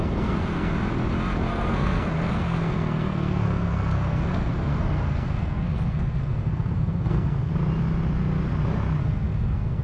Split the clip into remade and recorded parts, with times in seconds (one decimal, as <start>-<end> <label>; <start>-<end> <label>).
0.0-0.7 remade; 0.7-1.5 recorded; 1.5-7.5 remade; 7.5-9.0 recorded; 9.0-9.8 remade